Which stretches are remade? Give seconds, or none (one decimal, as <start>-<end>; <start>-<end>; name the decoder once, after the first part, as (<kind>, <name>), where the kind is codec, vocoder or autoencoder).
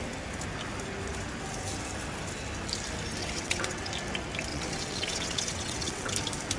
3.2-3.9 (vocoder, WaveNeXt); 4.5-6.1